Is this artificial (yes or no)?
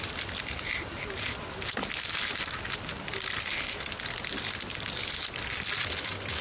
no